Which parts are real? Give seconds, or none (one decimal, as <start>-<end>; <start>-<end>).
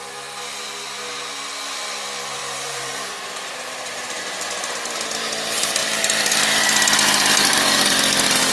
0.0-2.4; 4.2-8.5